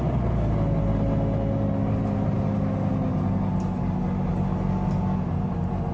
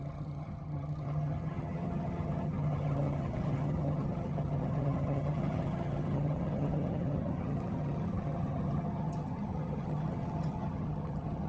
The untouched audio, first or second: first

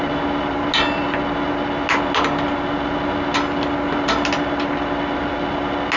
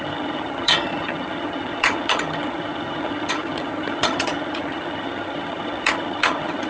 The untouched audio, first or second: first